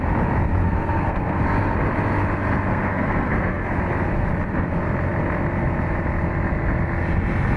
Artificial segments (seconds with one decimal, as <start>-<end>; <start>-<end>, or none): 0.6-1.4; 2.7-3.8